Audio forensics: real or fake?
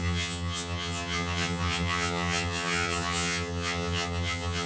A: fake